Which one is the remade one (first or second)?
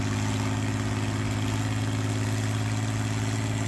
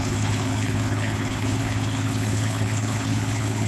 second